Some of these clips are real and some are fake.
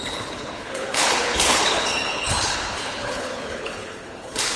fake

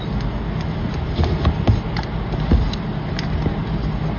real